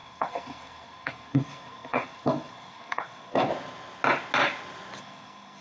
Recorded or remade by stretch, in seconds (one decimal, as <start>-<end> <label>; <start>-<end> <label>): 0.0-3.5 remade; 3.5-5.0 recorded; 5.0-5.6 remade